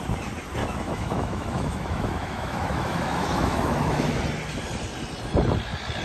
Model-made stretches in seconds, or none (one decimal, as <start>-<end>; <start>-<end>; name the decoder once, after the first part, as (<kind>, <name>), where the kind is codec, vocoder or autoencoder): 0.6-4.2 (autoencoder, DAC-VAE)